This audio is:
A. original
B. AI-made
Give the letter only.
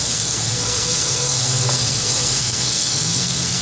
B